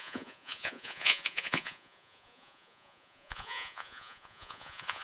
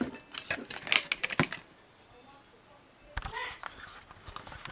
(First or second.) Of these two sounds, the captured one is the second